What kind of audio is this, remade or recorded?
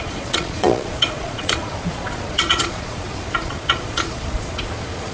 remade